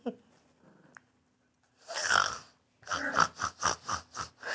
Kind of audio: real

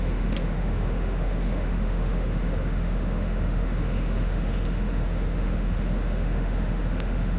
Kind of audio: fake